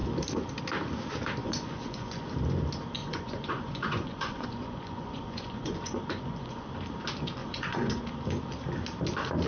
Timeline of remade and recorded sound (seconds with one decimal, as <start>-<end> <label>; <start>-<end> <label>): 0.0-1.4 recorded; 1.4-2.3 remade; 2.3-3.0 recorded; 3.0-6.7 remade; 6.7-7.4 recorded; 7.4-8.0 remade; 8.0-9.5 recorded